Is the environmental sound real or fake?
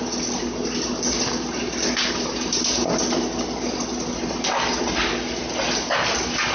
real